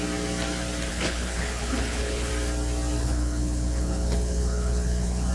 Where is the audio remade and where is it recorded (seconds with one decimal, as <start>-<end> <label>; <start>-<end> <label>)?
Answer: 0.0-0.9 recorded; 0.9-2.3 remade; 2.3-3.0 recorded; 3.0-5.3 remade